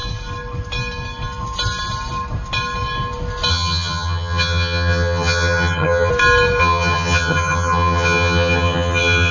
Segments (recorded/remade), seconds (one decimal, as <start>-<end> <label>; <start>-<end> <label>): 0.0-3.5 recorded; 3.5-6.1 remade; 6.1-6.6 recorded; 6.6-9.3 remade